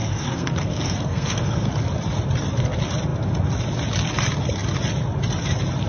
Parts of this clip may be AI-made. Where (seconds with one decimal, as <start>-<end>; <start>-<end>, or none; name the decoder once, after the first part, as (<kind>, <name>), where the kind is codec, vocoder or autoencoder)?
0.0-1.7 (codec, SNAC)